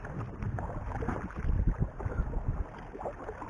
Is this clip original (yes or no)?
yes